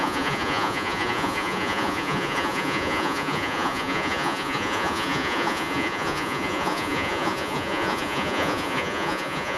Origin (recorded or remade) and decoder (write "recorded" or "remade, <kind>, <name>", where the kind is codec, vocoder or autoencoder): remade, vocoder, Vocos